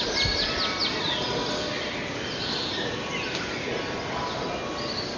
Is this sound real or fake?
real